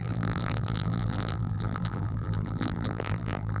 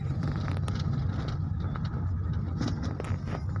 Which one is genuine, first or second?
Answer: second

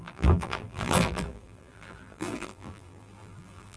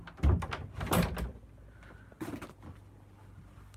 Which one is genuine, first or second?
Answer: second